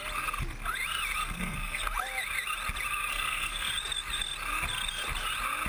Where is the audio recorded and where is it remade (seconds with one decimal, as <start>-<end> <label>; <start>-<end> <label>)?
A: 0.0-1.2 recorded; 1.2-1.8 remade; 1.8-3.1 recorded; 3.1-3.7 remade; 3.7-5.7 recorded